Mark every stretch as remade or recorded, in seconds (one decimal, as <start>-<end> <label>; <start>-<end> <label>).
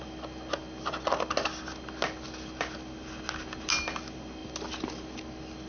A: 0.0-5.7 recorded